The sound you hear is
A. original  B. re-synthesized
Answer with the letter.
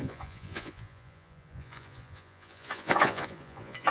B